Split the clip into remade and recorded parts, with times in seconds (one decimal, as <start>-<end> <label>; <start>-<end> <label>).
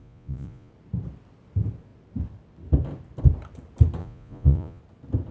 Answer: 0.0-0.7 remade; 0.7-4.0 recorded; 4.0-4.8 remade; 4.8-5.3 recorded